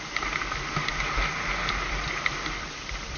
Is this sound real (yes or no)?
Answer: yes